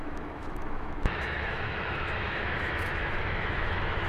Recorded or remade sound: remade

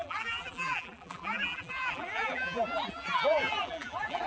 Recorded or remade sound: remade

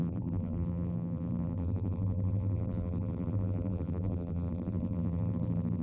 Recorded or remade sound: remade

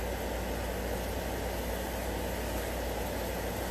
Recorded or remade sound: recorded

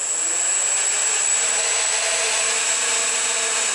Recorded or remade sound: recorded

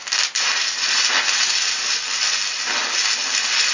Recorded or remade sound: recorded